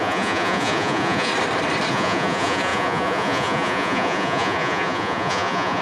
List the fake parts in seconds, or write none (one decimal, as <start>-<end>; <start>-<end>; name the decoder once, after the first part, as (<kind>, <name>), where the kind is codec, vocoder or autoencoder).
0.0-1.3 (vocoder, Vocos); 1.9-5.8